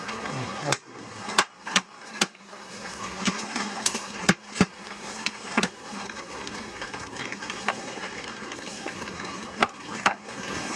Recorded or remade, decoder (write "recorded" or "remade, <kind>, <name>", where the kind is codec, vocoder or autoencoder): remade, codec, SNAC